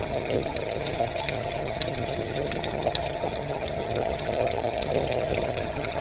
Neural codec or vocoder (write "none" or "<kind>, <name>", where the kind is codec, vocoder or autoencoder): vocoder, HiFi-GAN